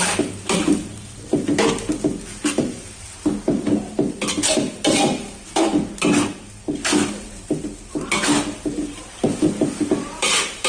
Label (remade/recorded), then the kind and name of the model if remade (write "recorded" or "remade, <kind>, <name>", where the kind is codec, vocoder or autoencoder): recorded